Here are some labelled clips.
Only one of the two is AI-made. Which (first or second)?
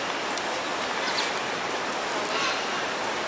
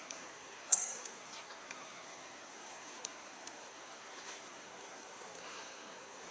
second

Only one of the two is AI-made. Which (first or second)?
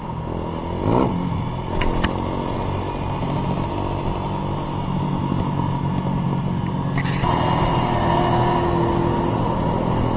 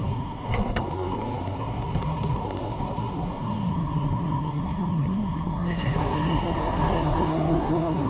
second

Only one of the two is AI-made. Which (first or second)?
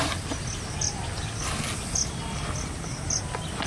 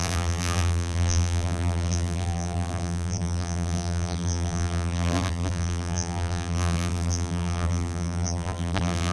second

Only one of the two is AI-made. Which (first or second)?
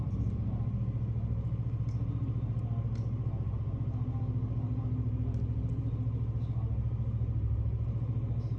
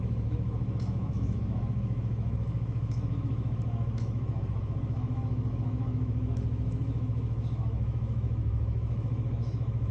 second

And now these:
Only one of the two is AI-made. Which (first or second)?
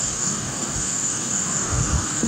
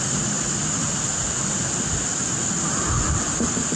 first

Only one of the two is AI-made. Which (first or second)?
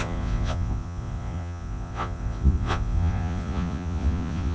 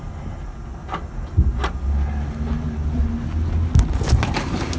first